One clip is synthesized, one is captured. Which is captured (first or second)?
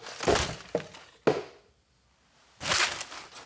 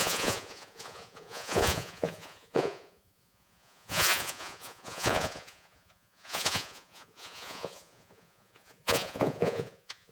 first